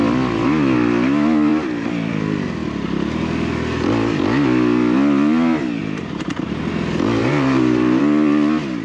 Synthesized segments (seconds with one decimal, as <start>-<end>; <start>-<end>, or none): 5.8-6.7; 7.2-8.0